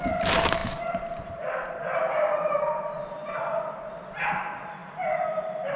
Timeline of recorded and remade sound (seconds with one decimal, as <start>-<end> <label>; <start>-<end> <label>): 0.0-5.8 recorded